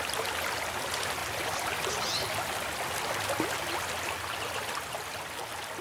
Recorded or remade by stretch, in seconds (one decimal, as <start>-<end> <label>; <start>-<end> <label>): 0.0-5.8 recorded

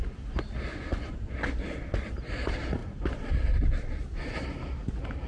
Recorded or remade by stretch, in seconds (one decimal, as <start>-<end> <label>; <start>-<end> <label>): 0.0-0.7 recorded; 0.7-1.3 remade; 1.3-5.3 recorded

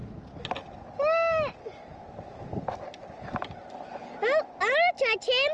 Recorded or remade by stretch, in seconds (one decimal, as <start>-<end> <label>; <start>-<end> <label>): 0.0-5.5 recorded

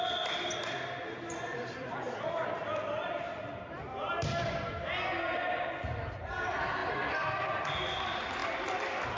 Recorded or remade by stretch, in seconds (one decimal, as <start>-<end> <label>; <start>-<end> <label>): 0.0-1.0 recorded; 1.0-4.7 remade; 4.7-6.8 recorded; 6.8-7.4 remade; 7.4-9.2 recorded